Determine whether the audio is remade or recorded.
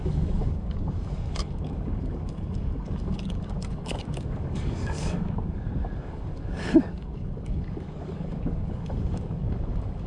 remade